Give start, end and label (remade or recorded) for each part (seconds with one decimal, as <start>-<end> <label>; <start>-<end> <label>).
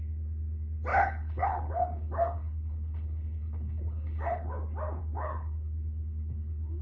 0.0-0.9 recorded; 0.9-4.6 remade; 4.6-5.0 recorded; 5.0-6.8 remade